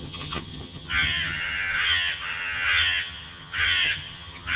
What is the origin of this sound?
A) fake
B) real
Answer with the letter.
A